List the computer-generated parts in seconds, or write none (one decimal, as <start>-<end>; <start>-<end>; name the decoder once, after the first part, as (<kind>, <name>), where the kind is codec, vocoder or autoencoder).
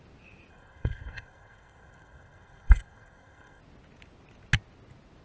0.5-3.6 (codec, SNAC)